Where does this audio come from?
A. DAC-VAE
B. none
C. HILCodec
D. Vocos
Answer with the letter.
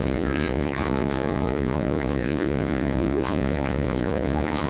D